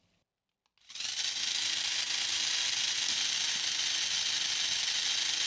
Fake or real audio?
real